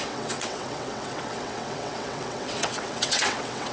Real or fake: fake